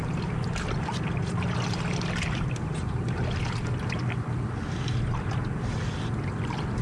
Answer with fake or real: real